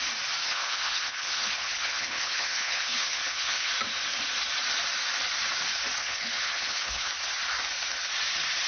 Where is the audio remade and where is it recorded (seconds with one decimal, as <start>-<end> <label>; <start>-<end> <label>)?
0.0-0.4 recorded; 0.4-3.7 remade; 3.7-6.0 recorded; 6.0-7.1 remade; 7.1-8.7 recorded